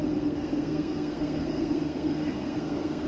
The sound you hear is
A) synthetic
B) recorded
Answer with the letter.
A